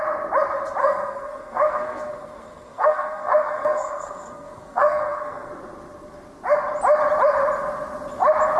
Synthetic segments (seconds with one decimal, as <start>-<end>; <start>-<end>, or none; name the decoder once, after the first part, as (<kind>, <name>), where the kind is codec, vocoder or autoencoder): 0.8-5.5 (codec, SNAC)